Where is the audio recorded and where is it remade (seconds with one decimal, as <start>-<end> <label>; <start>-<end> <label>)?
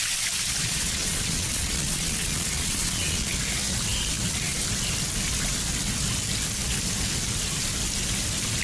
0.0-0.6 recorded; 0.6-3.3 remade; 3.3-8.6 recorded